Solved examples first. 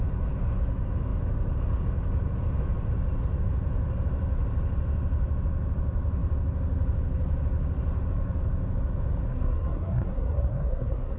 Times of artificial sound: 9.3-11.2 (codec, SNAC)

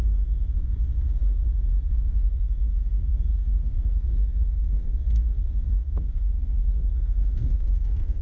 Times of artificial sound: 0.0-0.9 (codec, SNAC); 1.9-8.2

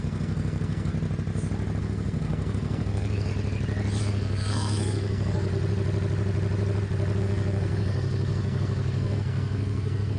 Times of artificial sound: 0.0-0.9 (codec, SNAC); 1.8-3.3; 4.0-5.5; 7.2-10.2